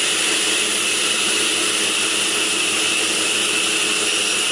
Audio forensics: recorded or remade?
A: recorded